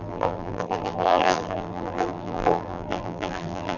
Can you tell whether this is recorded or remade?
remade